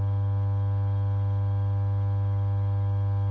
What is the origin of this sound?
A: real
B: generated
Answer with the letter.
A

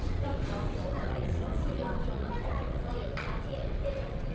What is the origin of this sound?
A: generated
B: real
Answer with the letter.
A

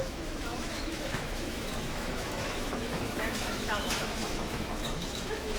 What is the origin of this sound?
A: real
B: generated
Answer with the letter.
B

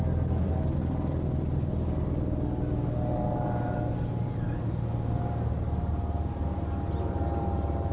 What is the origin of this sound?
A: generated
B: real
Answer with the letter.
B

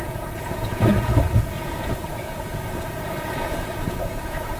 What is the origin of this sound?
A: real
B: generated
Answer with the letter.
B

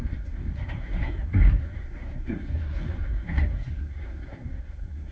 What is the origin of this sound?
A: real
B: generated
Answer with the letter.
B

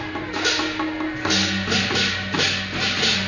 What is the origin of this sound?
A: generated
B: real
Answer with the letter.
B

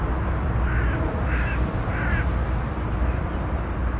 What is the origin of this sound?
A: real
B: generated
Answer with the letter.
A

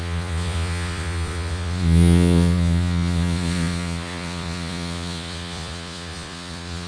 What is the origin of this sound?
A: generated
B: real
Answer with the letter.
A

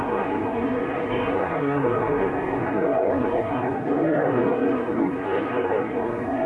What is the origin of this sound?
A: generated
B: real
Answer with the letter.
A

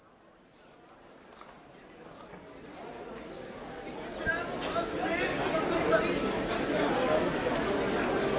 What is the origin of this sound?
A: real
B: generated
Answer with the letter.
A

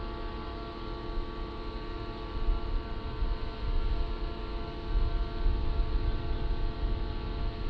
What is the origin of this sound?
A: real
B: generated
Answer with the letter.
A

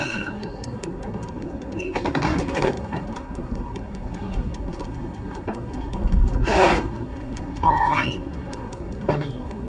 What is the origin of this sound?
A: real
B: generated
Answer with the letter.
B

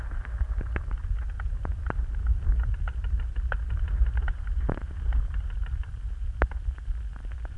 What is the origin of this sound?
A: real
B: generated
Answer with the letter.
A